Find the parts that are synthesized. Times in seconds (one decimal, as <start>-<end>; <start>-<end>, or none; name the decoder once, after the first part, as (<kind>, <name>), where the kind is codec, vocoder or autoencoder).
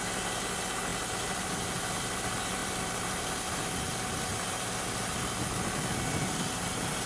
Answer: none